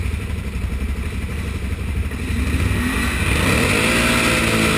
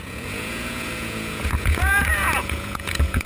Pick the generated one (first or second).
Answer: second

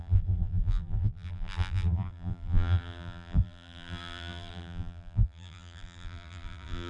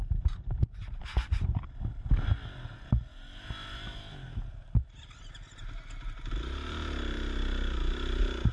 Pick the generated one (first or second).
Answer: first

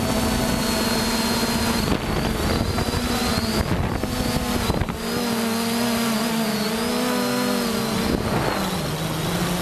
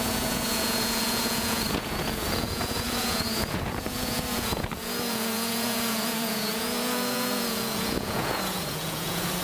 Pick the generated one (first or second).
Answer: second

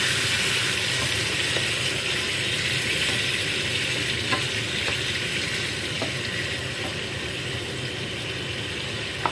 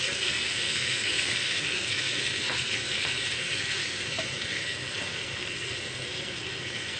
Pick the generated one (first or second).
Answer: second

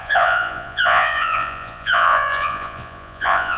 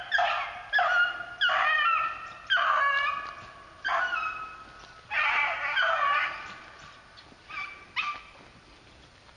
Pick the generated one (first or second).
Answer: first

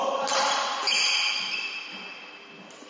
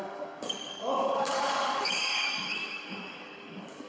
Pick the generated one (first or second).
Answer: second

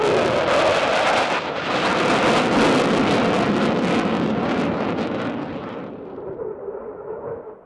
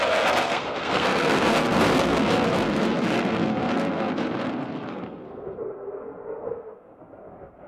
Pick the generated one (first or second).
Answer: second